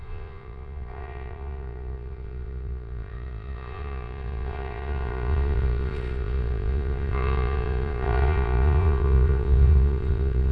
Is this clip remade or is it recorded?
remade